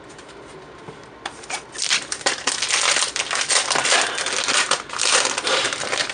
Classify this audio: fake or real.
real